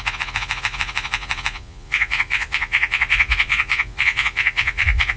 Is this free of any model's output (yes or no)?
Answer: no